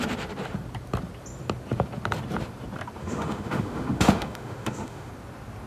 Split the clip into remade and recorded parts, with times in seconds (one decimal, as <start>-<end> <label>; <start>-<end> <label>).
0.0-3.0 recorded; 3.0-5.1 remade; 5.1-5.7 recorded